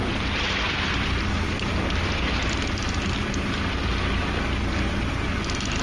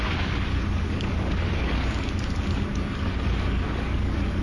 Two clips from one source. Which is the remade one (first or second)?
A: second